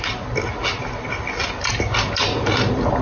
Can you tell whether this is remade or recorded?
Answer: recorded